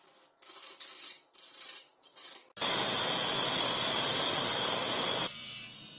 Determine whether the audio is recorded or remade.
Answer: recorded